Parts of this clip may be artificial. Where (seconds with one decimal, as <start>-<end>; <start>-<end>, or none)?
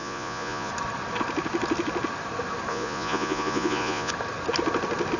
0.0-0.7; 2.7-4.1